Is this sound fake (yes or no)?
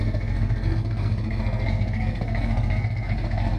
yes